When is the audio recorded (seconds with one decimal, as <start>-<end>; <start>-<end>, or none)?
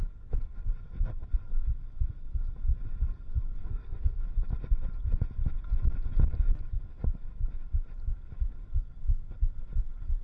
0.0-3.6; 4.2-10.2